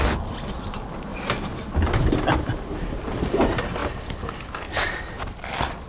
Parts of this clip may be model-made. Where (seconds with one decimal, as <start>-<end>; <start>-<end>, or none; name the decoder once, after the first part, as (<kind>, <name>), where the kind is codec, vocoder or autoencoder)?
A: 3.8-5.9 (vocoder, BigVGAN v2)